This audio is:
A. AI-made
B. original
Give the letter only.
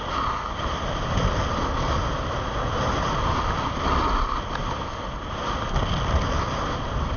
B